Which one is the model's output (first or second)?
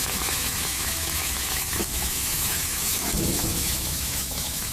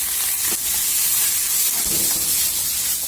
first